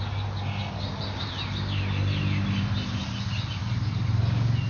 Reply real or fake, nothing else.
real